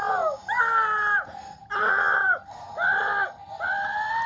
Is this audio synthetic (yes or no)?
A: no